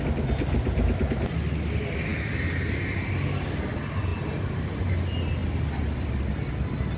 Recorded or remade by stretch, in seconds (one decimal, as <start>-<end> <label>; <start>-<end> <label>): 0.0-7.0 recorded